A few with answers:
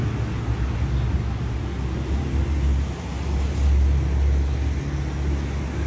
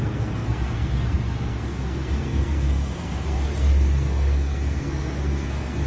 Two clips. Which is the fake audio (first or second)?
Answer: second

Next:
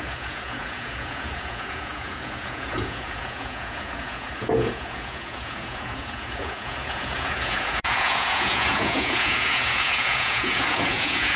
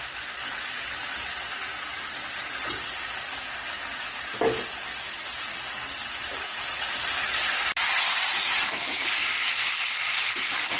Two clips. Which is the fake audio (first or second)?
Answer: first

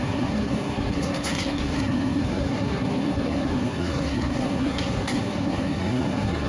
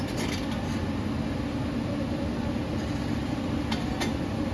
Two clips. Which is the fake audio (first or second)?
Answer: first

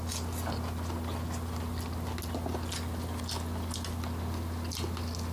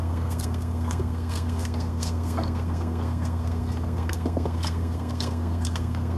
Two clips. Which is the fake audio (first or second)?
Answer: second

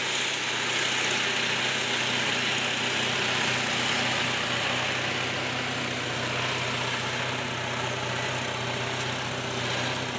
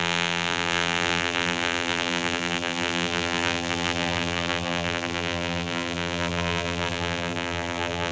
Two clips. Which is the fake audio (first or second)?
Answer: second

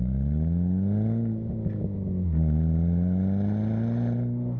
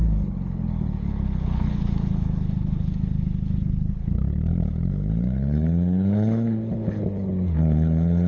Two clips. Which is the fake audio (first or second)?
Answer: second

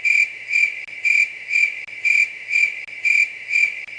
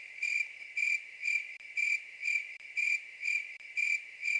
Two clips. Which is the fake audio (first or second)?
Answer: second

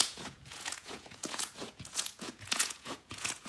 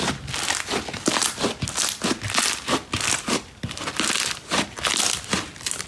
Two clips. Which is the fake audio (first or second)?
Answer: first